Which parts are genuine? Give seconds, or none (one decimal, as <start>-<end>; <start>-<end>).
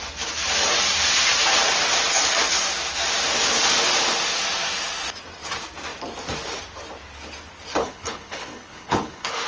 0.0-7.8